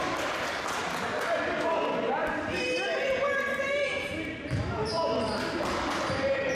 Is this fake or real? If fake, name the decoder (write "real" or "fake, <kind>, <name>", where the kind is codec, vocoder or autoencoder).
real